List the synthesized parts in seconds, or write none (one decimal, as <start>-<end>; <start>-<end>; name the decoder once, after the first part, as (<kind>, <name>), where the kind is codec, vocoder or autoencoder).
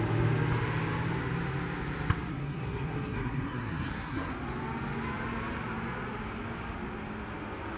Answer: 2.3-4.3 (codec, SNAC)